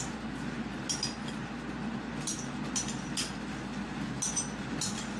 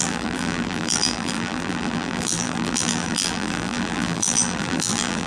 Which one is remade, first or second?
second